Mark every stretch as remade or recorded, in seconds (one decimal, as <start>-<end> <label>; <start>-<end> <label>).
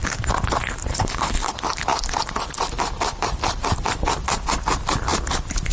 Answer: 0.0-0.9 recorded; 0.9-1.5 remade; 1.5-5.7 recorded